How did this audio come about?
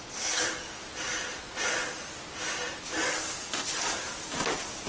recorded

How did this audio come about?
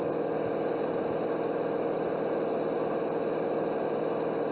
recorded